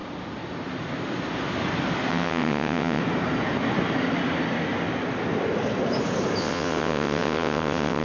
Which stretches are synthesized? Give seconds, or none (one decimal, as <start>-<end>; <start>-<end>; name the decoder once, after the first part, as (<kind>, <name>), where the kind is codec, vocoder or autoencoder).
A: 2.1-3.0 (vocoder, WaveNeXt); 6.4-8.0